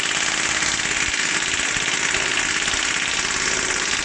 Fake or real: real